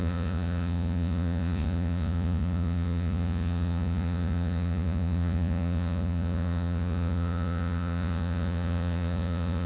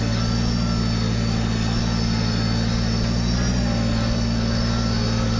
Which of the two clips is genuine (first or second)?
second